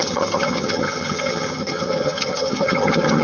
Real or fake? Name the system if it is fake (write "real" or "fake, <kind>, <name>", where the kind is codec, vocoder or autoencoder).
fake, vocoder, HiFi-GAN